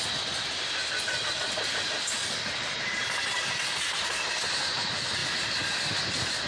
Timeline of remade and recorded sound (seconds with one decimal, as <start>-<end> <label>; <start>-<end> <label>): 0.0-6.5 recorded